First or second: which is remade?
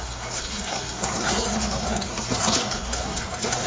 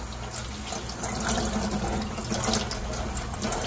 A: first